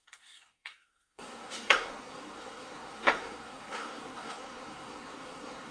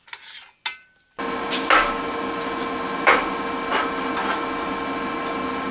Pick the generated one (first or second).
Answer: first